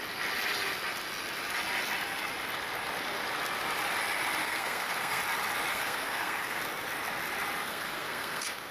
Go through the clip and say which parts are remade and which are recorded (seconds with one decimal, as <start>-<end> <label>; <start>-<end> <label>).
0.0-4.4 recorded; 4.4-5.2 remade; 5.2-5.7 recorded; 5.7-6.6 remade; 6.6-7.7 recorded; 7.7-8.7 remade